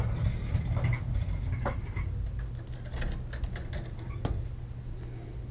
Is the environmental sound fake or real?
real